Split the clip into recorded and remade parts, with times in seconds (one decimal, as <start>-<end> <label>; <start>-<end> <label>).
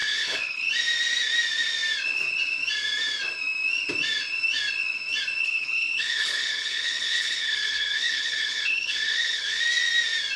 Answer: 0.0-0.7 remade; 0.7-5.4 recorded; 5.4-9.6 remade; 9.6-10.4 recorded